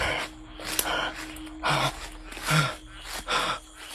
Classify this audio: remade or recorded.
recorded